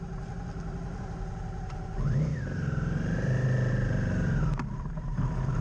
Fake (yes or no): no